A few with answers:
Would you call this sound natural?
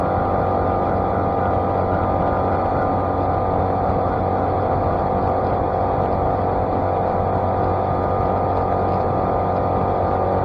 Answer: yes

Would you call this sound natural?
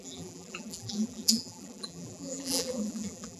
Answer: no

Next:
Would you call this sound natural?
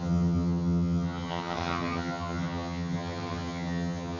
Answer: no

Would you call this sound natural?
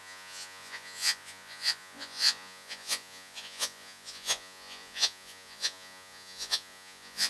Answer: no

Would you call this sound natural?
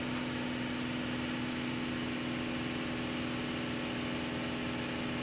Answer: yes